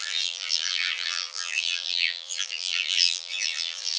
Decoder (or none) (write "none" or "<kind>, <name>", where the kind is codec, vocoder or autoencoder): vocoder, BigVGAN v2